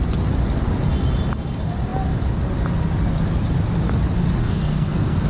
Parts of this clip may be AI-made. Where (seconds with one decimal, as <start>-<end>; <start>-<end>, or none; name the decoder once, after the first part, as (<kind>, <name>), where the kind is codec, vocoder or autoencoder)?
4.4-5.3 (codec, SNAC)